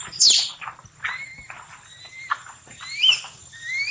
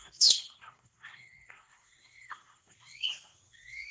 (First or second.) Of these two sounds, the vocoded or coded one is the second